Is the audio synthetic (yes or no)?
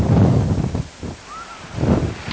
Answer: no